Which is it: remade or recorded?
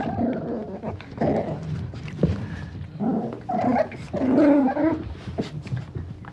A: recorded